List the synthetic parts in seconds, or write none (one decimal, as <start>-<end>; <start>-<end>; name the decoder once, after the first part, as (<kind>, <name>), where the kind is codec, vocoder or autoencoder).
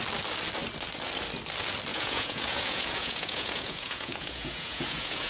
1.9-5.3 (vocoder, Vocos)